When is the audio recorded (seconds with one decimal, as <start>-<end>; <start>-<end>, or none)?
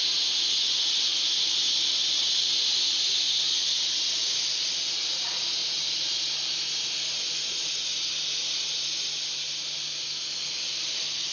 0.0-11.3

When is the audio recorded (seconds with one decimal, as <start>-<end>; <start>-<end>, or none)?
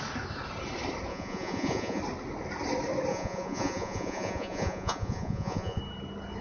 0.0-1.1; 2.0-3.1; 5.8-6.4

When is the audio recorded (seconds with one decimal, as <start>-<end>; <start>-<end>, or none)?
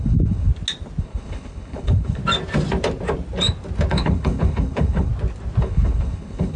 0.5-1.0; 2.2-3.9; 5.1-5.6